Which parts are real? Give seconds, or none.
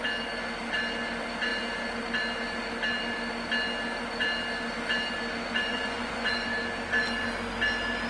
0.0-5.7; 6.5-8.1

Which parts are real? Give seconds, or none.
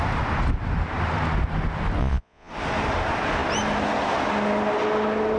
0.0-2.0; 2.5-5.4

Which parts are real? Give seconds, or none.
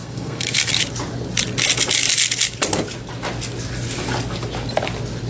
0.8-5.3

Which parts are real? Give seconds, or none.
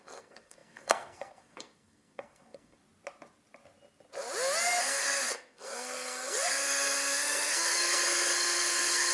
2.8-4.8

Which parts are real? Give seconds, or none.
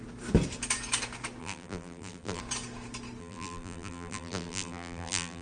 0.0-1.4; 2.4-3.2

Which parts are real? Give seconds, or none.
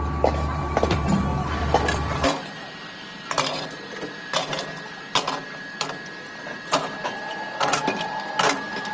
0.0-1.3; 3.5-8.9